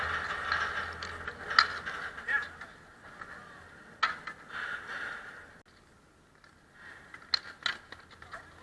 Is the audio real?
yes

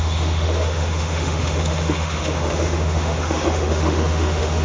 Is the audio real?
no